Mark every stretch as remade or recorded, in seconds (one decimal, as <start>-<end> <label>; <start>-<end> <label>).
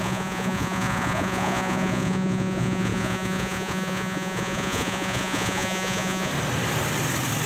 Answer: 0.0-6.3 remade; 6.3-7.5 recorded